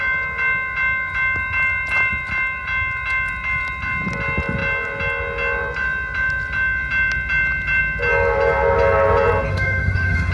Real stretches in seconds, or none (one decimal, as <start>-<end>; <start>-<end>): 0.0-9.5